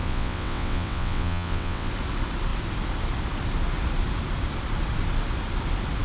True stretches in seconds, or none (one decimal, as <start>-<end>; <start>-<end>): 1.9-6.0